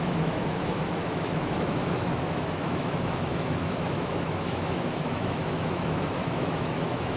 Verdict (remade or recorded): remade